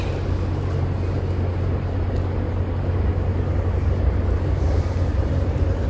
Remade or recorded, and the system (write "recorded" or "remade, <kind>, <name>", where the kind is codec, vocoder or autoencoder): recorded